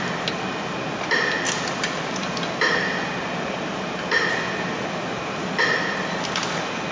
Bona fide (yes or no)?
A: yes